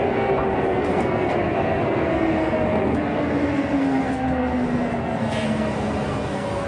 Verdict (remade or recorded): remade